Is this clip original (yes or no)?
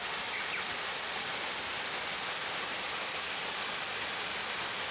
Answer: yes